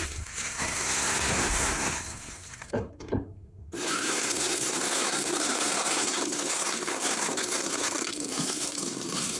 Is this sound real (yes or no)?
no